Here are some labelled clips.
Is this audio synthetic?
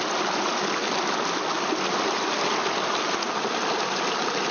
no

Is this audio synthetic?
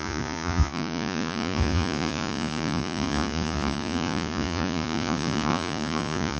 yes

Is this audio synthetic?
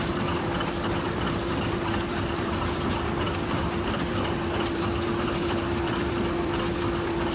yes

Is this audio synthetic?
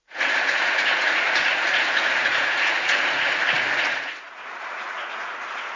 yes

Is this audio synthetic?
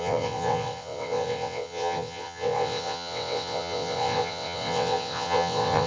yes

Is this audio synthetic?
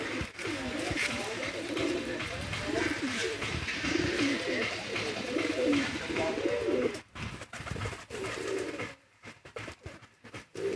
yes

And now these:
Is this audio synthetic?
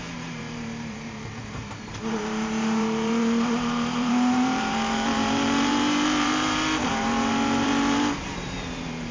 yes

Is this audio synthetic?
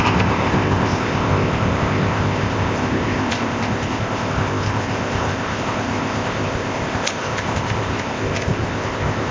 yes